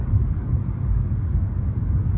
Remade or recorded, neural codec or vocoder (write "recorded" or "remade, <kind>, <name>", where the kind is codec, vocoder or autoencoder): remade, codec, DAC